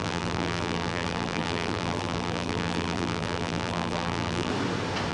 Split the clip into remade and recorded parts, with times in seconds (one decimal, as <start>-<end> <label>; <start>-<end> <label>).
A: 0.0-4.5 remade; 4.5-5.1 recorded